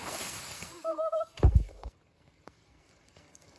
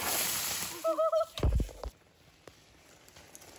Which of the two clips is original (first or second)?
second